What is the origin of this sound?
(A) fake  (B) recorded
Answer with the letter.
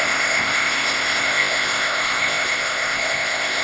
A